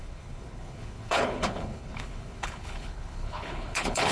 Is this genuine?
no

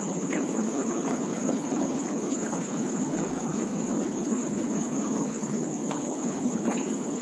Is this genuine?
no